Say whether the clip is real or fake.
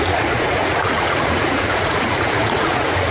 fake